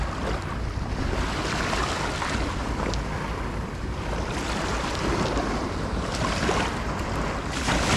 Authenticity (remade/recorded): recorded